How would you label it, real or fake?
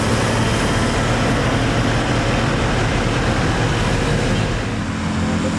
real